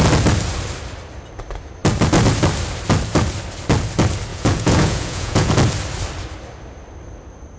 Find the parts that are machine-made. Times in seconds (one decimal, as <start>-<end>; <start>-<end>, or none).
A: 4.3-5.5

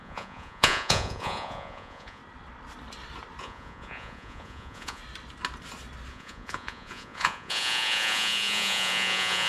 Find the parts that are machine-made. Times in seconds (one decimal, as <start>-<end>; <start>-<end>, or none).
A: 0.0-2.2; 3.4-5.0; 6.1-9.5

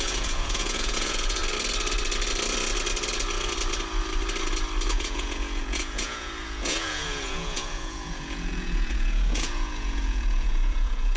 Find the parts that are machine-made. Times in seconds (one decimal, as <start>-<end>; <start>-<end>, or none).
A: 0.0-1.4; 4.9-11.2

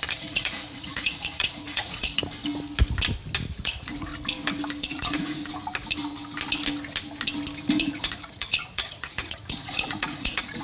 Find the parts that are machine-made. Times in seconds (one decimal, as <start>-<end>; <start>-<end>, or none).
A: 0.0-2.2; 3.5-4.1; 4.8-5.4; 7.8-10.6

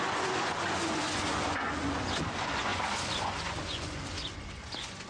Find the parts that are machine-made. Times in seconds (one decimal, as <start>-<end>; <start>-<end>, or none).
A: 0.0-5.1

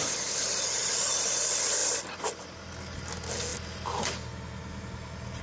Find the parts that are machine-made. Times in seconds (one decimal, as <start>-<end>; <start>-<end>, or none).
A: none

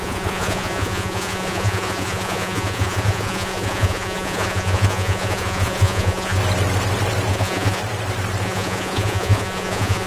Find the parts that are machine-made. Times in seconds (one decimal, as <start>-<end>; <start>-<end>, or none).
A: 0.0-6.4; 7.3-7.8; 8.4-10.1